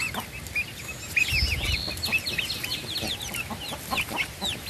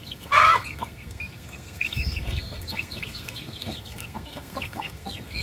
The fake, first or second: second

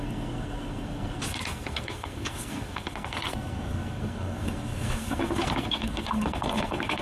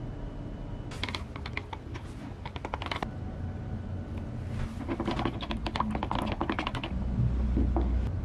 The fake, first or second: first